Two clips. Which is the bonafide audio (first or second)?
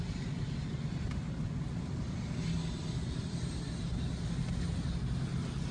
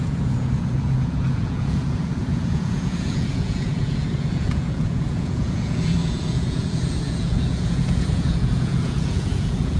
first